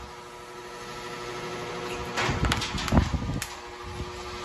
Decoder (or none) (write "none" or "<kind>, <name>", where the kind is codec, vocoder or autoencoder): none